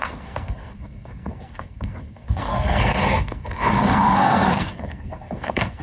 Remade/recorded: remade